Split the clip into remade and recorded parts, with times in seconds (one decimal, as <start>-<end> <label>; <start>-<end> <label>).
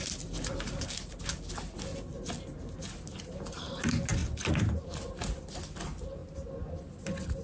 0.0-7.4 recorded